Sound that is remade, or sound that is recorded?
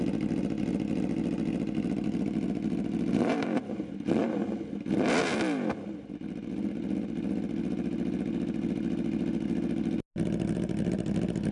recorded